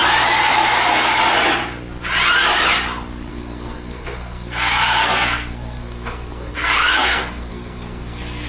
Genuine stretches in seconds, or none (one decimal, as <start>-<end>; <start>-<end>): 0.0-3.3